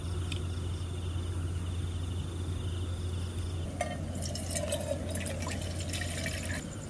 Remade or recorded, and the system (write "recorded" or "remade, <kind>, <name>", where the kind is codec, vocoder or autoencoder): recorded